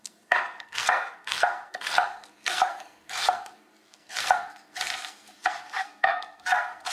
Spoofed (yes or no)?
yes